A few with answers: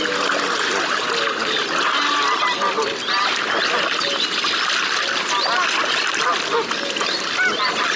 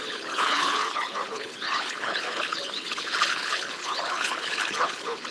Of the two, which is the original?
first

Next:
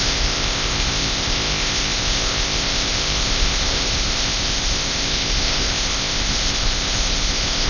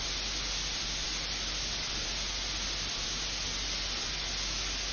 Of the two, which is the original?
second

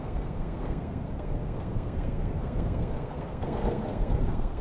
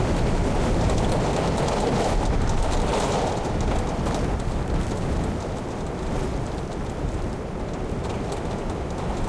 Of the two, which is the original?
second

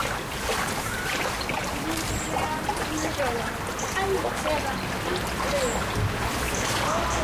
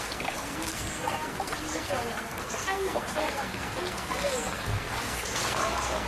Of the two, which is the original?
first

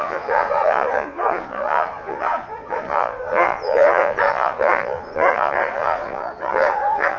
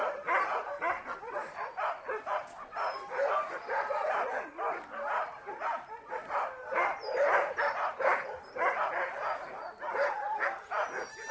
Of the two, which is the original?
second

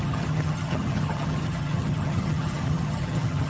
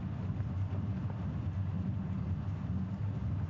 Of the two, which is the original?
second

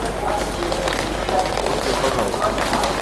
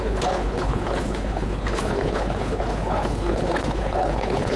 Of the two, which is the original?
first